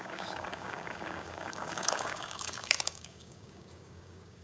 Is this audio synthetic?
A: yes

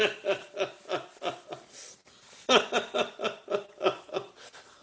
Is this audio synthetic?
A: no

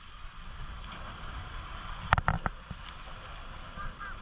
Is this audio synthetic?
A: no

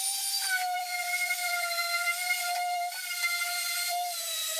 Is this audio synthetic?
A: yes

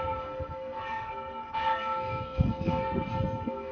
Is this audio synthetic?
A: yes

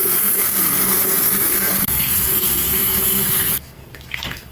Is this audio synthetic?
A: yes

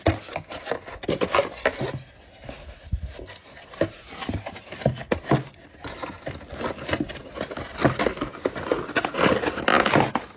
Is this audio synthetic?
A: no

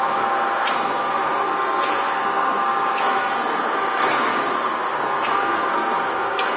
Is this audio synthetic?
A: yes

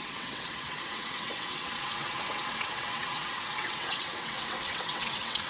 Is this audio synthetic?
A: yes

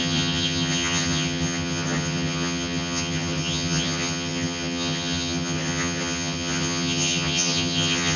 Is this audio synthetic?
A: yes